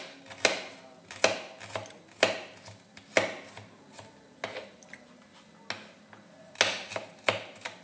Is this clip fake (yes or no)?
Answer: no